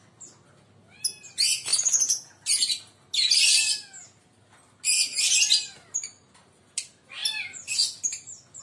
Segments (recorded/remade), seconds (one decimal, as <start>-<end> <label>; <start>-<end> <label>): 0.0-8.6 recorded

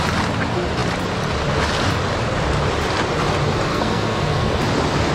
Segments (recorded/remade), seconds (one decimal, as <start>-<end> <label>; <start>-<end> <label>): 0.0-3.7 recorded; 3.7-4.6 remade; 4.6-5.1 recorded

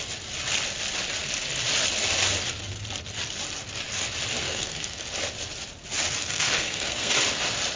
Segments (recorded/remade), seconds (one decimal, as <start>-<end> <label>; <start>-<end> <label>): 0.0-4.4 recorded; 4.4-5.0 remade; 5.0-6.2 recorded; 6.2-7.1 remade; 7.1-7.8 recorded

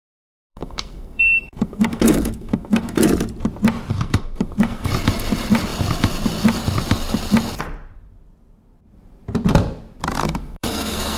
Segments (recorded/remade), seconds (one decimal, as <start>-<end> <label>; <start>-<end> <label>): 0.0-0.5 recorded; 0.5-3.0 remade; 3.0-3.9 recorded; 3.9-4.9 remade; 4.9-10.2 recorded; 10.2-11.2 remade